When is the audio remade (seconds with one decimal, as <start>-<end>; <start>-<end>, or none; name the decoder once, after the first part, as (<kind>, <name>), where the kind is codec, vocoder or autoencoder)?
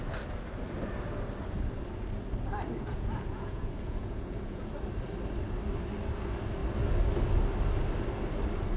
2.9-4.7 (vocoder, Vocos)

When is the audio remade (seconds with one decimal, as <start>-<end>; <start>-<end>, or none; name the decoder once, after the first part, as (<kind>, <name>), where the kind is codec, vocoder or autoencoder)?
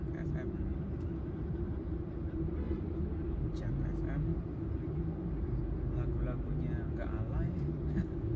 0.7-3.0 (vocoder, BigVGAN v2); 4.3-5.6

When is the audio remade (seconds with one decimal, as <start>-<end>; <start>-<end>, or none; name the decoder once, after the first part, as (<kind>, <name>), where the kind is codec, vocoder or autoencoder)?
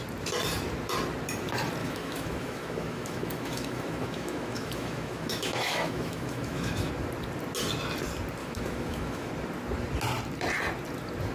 1.8-6.9 (autoencoder, DAC-VAE); 8.4-9.3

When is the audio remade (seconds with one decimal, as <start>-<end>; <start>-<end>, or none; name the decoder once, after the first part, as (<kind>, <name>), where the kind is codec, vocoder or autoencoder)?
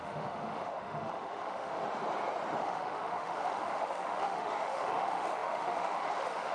0.0-1.8 (autoencoder, DAC-VAE); 2.6-6.5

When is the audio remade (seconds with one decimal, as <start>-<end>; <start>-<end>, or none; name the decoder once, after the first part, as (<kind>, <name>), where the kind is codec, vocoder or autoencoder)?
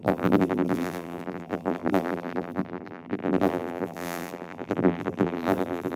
0.0-6.0 (vocoder, BigVGAN v2)